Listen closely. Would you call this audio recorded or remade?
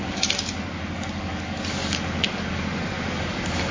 remade